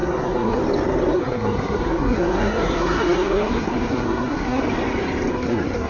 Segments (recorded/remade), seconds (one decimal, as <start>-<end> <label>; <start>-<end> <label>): 0.0-0.6 remade; 0.6-1.1 recorded; 1.1-4.6 remade; 4.6-5.3 recorded; 5.3-5.9 remade